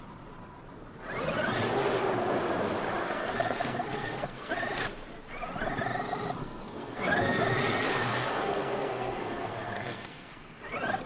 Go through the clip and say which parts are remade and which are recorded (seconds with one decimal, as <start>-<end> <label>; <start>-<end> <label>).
0.0-3.0 recorded; 3.0-4.5 remade; 4.5-6.4 recorded; 6.4-7.4 remade; 7.4-8.1 recorded; 8.1-10.6 remade; 10.6-11.1 recorded